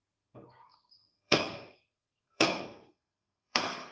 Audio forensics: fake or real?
fake